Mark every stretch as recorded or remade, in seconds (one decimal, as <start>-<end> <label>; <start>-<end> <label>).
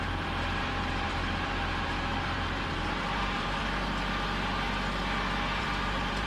0.0-3.6 remade; 3.6-5.6 recorded; 5.6-6.3 remade